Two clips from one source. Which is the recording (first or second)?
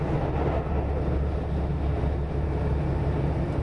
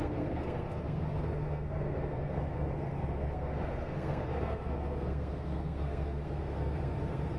first